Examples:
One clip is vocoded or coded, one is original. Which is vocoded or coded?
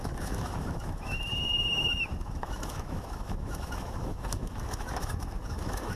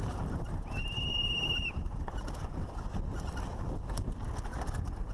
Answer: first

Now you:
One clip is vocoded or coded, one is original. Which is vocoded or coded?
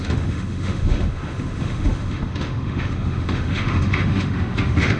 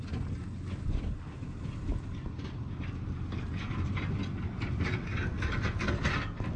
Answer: first